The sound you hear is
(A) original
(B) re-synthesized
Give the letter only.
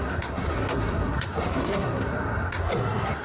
B